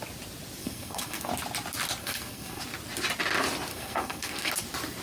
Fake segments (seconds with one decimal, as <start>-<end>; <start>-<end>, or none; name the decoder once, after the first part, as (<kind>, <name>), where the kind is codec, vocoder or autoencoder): 0.6-1.3 (codec, SNAC); 2.0-2.6; 3.7-4.5

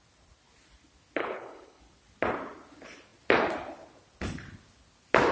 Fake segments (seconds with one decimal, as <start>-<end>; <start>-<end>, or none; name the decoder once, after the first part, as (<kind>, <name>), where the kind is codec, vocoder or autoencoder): 1.2-1.8 (codec, HILCodec)

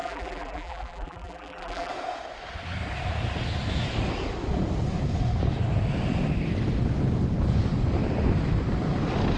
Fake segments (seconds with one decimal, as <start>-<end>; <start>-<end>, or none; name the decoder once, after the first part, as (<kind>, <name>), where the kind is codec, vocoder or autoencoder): 0.0-1.9 (vocoder, BigVGAN v2)

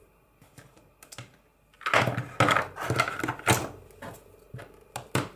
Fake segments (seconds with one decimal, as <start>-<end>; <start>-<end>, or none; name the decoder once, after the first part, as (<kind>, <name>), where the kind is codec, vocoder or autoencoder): none

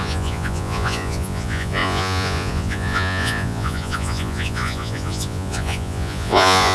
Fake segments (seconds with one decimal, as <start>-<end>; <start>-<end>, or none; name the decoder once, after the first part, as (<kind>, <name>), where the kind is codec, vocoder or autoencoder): 0.0-6.7 (vocoder, Vocos)